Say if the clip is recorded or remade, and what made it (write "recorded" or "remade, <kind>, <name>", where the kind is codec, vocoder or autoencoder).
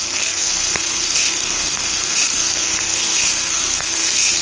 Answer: remade, codec, SNAC